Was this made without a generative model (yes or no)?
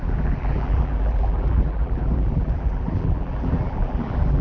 no